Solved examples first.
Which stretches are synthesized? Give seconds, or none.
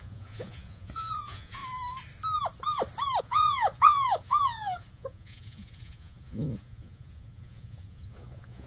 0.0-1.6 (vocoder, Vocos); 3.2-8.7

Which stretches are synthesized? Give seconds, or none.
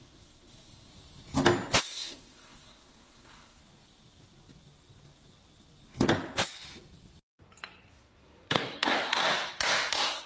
0.0-0.9 (codec, SNAC); 1.8-3.6; 7.9-9.2; 9.9-10.3